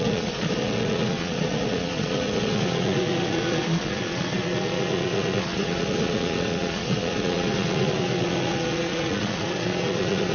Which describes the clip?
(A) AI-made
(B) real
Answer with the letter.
A